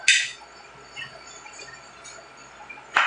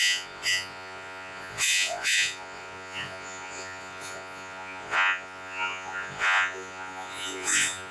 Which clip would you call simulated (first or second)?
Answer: second